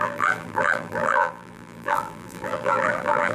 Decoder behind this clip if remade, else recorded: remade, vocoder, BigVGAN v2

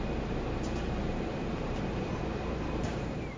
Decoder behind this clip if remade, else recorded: remade, vocoder, BigVGAN v2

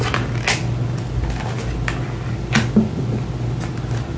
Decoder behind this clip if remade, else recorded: recorded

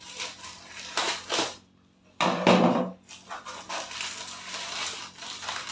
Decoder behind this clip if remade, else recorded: recorded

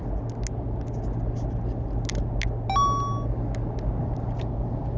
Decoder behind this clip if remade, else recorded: recorded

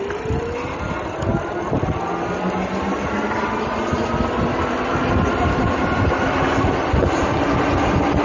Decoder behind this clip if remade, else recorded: recorded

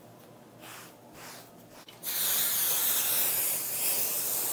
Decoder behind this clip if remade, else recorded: recorded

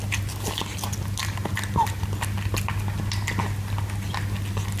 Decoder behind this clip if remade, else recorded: recorded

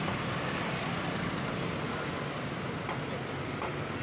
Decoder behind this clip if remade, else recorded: recorded